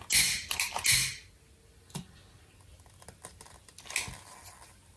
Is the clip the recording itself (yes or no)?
yes